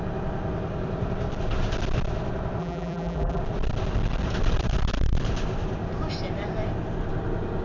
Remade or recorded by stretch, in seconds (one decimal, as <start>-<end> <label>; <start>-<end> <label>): 0.0-2.6 recorded; 2.6-3.4 remade; 3.4-7.6 recorded